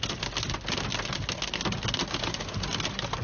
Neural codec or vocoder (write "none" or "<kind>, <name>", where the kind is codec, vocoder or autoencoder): none